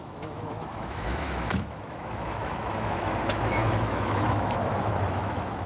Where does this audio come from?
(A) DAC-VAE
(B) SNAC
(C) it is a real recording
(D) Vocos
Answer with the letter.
A